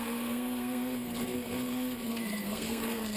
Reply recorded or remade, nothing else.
remade